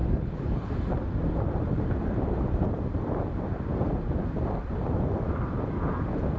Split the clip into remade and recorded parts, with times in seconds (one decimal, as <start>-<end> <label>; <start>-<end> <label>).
0.0-0.7 remade; 0.7-6.4 recorded